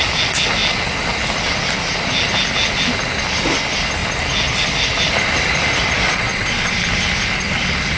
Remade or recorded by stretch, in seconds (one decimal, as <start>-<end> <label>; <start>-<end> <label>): 0.0-6.0 recorded; 6.0-6.7 remade; 6.7-8.0 recorded